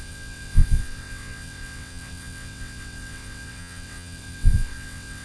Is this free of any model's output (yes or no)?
no